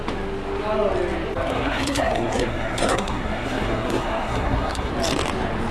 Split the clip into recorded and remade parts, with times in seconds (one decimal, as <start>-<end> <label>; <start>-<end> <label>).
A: 0.0-1.5 recorded; 1.5-4.9 remade; 4.9-5.7 recorded